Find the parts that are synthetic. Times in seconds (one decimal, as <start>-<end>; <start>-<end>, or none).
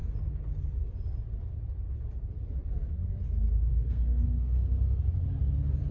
3.7-5.0